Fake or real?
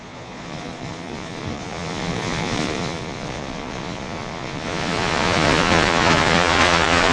fake